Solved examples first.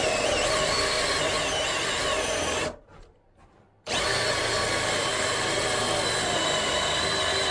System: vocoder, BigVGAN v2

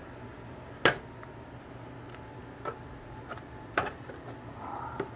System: none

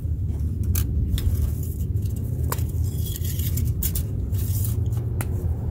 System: none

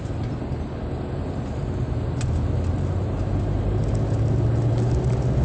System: none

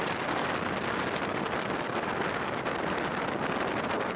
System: none